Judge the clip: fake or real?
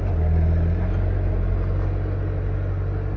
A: real